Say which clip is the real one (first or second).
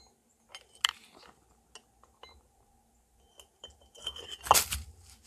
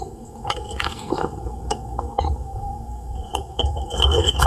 first